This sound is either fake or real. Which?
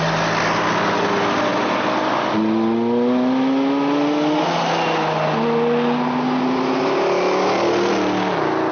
real